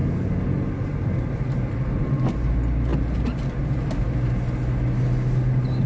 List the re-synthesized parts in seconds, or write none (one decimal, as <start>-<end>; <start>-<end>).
none